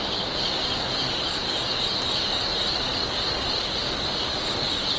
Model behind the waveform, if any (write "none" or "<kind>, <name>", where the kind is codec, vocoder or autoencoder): none